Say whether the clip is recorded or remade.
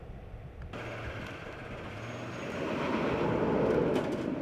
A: recorded